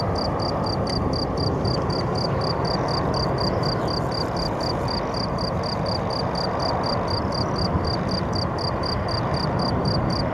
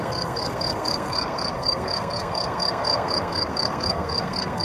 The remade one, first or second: second